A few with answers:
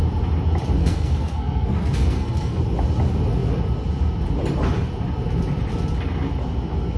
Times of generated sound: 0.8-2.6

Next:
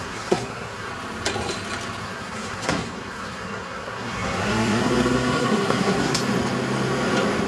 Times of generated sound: 0.0-0.9; 2.0-6.2

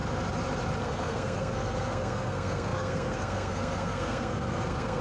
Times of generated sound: 0.8-5.0

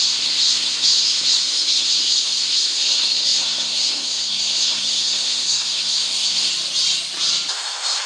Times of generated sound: 0.0-6.5; 7.5-8.1